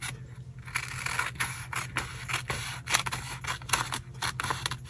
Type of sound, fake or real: real